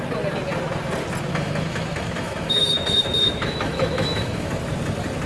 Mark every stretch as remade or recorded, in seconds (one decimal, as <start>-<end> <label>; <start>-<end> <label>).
0.0-1.3 recorded; 1.3-4.5 remade; 4.5-5.3 recorded